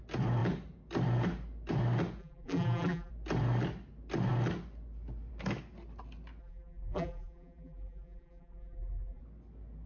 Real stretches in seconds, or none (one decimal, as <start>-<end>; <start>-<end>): 0.0-2.2; 3.1-6.4; 9.2-9.9